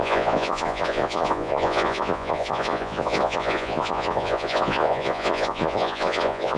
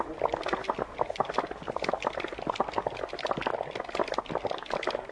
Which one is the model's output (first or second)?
first